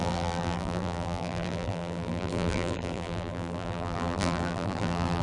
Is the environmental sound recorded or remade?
remade